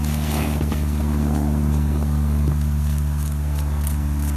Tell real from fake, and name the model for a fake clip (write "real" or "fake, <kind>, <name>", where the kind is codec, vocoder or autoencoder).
fake, codec, SNAC